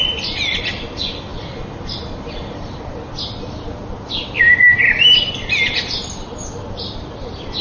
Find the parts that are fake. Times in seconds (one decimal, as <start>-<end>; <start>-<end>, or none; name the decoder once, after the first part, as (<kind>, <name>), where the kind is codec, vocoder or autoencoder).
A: none